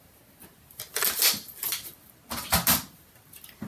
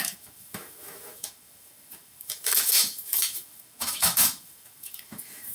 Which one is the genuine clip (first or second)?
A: first